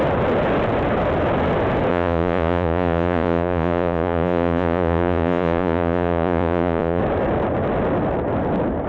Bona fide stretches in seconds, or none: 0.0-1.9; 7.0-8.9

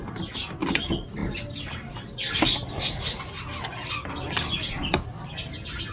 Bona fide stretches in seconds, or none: 0.0-1.2; 3.4-5.9

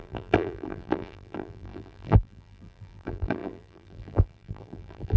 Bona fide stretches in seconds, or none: none

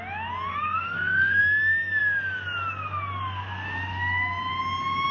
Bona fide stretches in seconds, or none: 0.0-0.5; 1.4-5.1

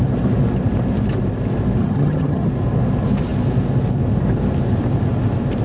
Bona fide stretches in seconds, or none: 0.0-1.8; 2.5-5.6

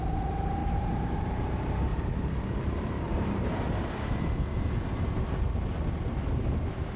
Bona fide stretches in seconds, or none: 0.0-0.6; 1.2-1.9; 3.9-7.0

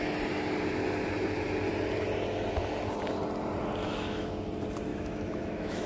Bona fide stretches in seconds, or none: 0.0-3.8; 4.3-4.9

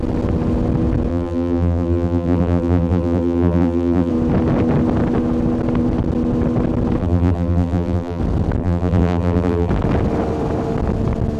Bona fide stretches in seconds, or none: 0.0-1.1; 4.1-7.0; 8.2-8.6; 9.7-11.4